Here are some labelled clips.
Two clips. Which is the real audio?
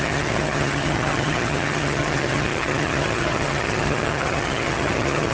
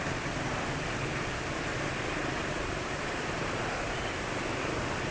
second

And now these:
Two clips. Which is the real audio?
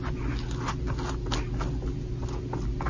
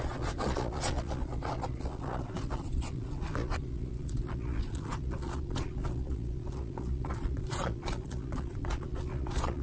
first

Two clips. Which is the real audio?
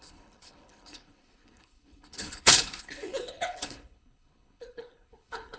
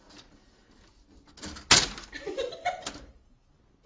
second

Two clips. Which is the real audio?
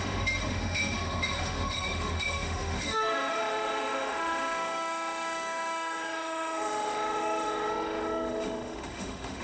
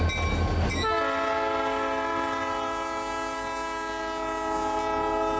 second